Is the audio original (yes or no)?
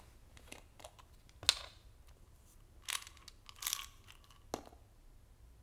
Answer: yes